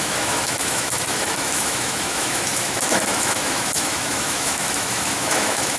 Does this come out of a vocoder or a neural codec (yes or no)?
yes